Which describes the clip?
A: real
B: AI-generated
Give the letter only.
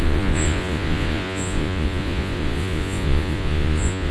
B